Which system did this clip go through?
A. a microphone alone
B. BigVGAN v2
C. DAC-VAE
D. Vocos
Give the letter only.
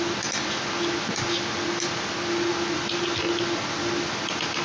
A